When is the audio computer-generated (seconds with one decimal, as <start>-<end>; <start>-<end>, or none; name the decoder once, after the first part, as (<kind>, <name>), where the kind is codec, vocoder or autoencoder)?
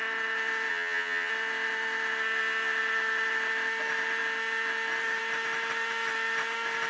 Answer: 0.7-1.3 (vocoder, HiFi-GAN)